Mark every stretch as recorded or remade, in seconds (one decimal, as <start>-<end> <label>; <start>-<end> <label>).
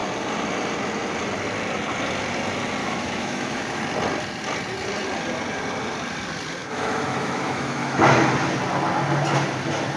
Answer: 0.0-2.8 recorded; 2.8-3.8 remade; 3.8-6.6 recorded; 6.6-8.1 remade; 8.1-10.0 recorded